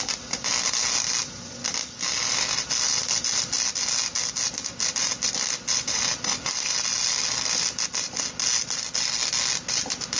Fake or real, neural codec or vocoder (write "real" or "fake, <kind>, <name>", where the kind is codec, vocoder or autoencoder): real